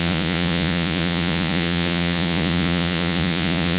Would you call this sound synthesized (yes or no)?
yes